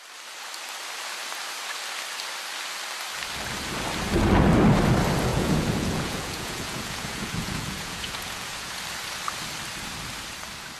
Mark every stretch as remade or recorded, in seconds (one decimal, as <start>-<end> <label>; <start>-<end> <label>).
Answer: 0.0-5.3 recorded; 5.3-8.8 remade; 8.8-10.8 recorded